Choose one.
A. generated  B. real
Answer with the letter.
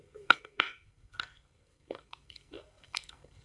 A